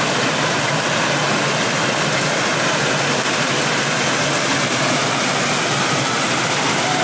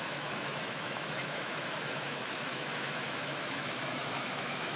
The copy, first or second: second